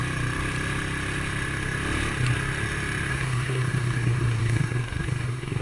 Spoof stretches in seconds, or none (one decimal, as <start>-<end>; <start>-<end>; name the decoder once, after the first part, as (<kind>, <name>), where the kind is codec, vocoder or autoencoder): 3.1-5.6 (codec, SNAC)